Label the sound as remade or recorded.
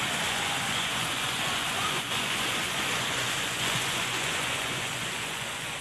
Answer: remade